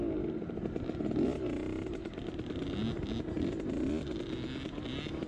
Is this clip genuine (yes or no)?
yes